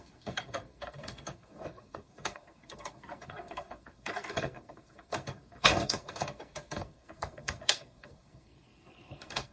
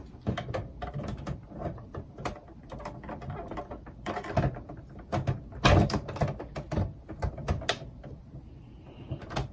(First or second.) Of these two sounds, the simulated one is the first